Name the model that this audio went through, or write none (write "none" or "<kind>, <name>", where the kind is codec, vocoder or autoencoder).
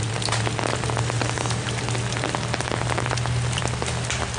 none